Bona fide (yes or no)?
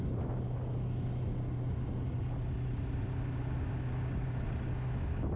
yes